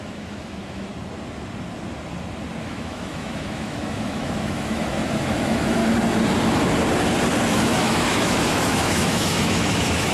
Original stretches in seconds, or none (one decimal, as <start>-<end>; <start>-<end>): 0.9-2.6; 5.8-7.5